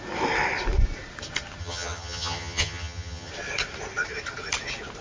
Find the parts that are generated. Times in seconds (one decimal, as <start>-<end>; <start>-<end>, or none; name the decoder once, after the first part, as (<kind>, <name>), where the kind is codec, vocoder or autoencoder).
1.6-3.3 (vocoder, HiFi-GAN)